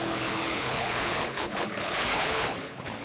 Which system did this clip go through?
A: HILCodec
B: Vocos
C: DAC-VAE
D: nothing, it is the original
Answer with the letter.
A